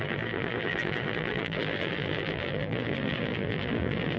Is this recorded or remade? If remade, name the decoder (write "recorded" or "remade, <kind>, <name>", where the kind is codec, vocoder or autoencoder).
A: remade, vocoder, BigVGAN v2